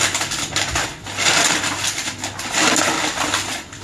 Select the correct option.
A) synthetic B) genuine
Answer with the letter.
B